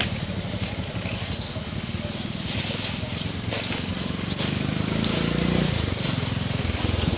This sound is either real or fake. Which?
real